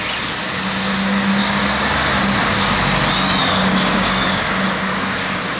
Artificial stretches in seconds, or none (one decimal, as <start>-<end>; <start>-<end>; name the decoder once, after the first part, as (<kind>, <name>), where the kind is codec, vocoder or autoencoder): 1.4-2.2 (codec, DAC); 3.4-5.6